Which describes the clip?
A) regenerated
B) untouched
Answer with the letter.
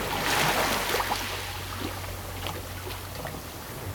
B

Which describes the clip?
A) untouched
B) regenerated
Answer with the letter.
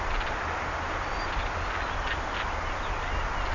A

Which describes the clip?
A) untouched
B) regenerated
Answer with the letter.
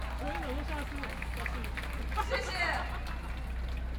A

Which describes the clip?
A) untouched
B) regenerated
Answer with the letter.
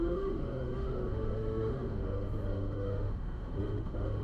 B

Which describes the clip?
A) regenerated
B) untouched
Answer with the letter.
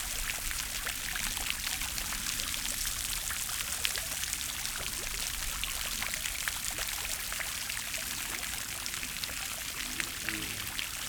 B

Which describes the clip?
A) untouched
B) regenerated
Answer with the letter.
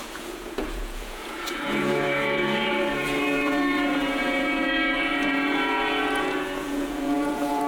B